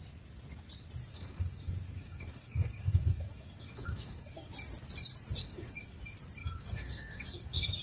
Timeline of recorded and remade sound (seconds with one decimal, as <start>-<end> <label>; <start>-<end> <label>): 0.0-1.1 recorded; 1.1-4.5 remade; 4.5-5.4 recorded; 5.4-6.0 remade; 6.0-6.4 recorded; 6.4-7.8 remade